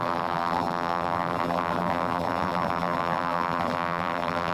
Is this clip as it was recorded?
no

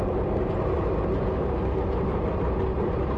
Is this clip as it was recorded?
yes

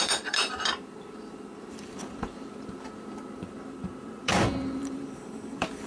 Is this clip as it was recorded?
no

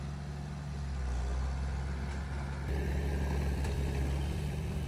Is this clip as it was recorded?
no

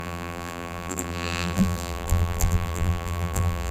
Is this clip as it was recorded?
no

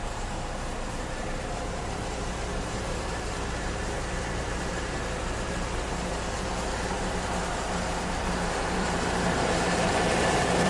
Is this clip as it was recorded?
no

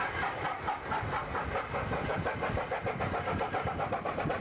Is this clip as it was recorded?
yes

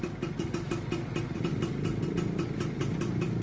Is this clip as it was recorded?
no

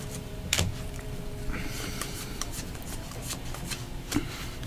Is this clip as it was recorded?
no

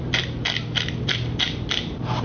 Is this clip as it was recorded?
no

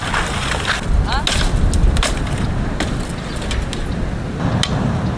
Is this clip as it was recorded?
yes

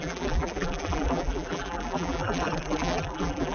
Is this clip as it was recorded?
no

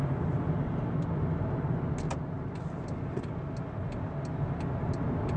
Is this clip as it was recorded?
yes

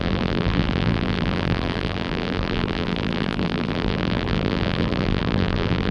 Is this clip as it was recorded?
no